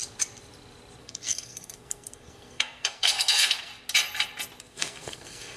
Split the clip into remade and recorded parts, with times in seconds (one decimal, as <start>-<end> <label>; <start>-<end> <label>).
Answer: 0.0-1.0 recorded; 1.0-3.7 remade; 3.7-4.6 recorded; 4.6-5.6 remade